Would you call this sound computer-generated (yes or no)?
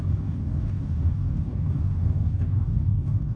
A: yes